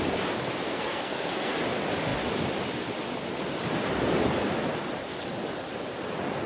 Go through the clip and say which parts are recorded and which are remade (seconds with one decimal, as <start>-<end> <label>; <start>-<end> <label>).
0.0-0.7 recorded; 0.7-1.6 remade; 1.6-6.5 recorded